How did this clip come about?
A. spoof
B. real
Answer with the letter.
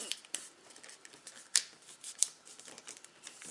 A